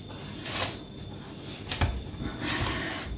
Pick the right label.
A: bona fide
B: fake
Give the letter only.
A